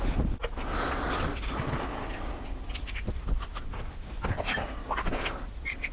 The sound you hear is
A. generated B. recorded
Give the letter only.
B